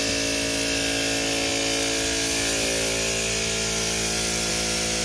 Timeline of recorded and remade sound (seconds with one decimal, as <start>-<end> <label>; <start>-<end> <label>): 0.0-5.0 recorded